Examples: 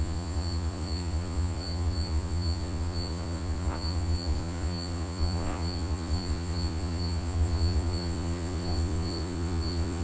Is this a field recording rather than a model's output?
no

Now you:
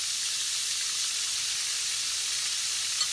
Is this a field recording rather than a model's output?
yes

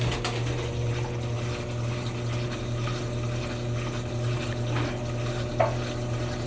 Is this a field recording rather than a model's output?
yes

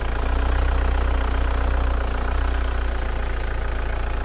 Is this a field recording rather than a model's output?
yes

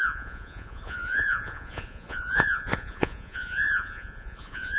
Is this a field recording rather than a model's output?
no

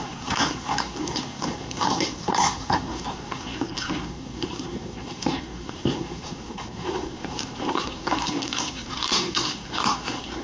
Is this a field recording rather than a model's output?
no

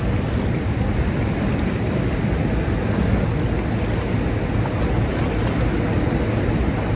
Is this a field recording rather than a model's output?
yes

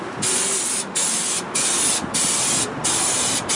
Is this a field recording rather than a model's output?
yes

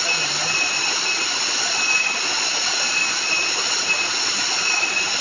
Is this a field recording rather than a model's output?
yes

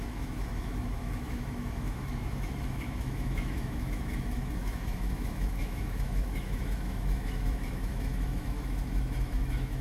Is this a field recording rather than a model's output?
no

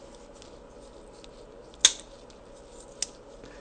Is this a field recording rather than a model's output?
yes